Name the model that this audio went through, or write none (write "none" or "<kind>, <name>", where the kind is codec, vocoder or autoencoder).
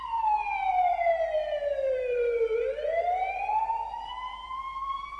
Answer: vocoder, BigVGAN v2